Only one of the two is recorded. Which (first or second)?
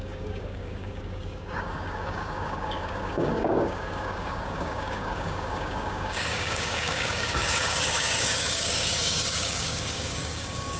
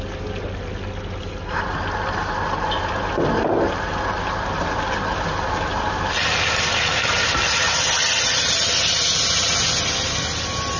second